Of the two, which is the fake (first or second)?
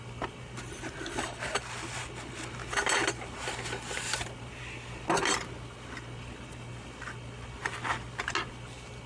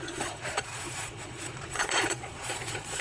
second